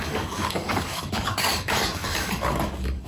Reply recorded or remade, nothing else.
remade